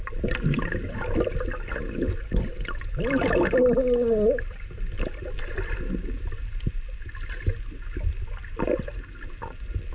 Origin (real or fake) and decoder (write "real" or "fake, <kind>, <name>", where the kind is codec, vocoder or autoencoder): real